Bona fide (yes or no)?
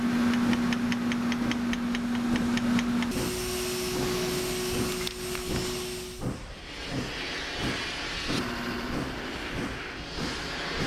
yes